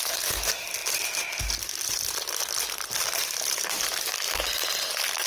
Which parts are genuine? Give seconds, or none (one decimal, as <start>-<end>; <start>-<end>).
0.0-5.3